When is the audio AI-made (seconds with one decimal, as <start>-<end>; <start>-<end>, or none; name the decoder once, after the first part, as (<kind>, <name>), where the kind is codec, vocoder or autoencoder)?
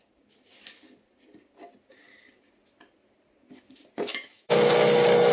4.1-4.7 (autoencoder, DAC-VAE)